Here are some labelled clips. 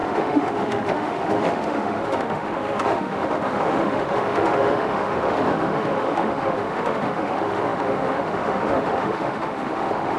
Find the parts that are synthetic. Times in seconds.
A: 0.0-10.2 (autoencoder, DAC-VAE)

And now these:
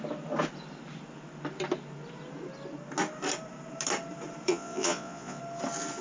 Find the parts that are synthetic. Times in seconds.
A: 4.5-5.4 (vocoder, Vocos)

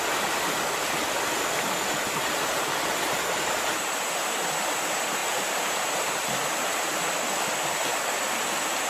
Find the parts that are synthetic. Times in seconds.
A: 5.2-7.1 (vocoder, BigVGAN v2)